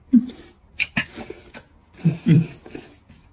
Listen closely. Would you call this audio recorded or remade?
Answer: recorded